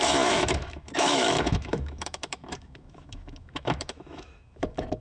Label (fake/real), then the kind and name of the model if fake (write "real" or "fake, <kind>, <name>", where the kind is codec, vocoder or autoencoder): fake, autoencoder, DAC-VAE